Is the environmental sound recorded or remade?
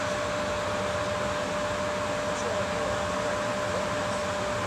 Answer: recorded